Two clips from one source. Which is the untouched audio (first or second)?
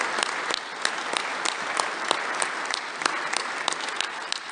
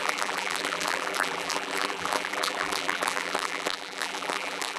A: first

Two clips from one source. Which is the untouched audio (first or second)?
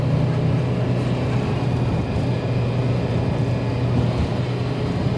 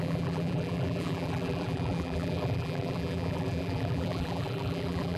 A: first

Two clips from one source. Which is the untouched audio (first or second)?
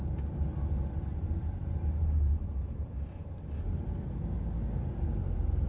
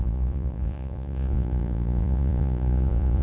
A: first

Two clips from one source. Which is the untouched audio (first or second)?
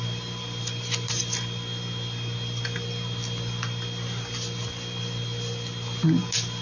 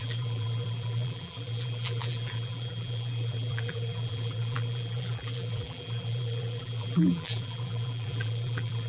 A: first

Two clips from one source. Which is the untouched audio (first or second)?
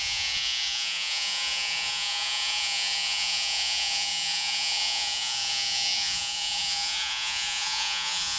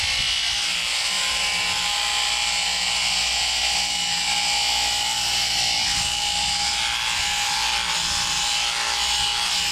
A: second